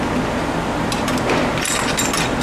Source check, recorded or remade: recorded